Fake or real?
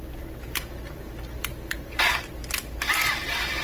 real